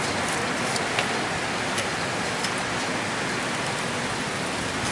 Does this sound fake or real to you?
real